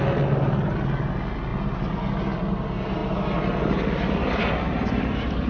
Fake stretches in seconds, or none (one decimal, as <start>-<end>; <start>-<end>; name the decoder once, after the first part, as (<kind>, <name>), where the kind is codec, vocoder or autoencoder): none